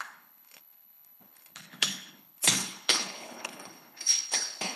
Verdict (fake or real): fake